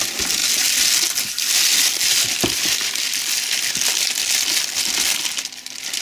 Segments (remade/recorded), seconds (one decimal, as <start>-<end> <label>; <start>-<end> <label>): 0.0-6.0 recorded